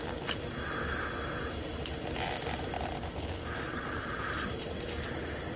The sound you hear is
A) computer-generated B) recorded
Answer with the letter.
B